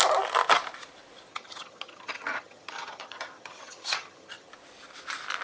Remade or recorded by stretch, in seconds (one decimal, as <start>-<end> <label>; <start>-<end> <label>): 0.0-1.3 recorded; 1.3-4.5 remade; 4.5-5.4 recorded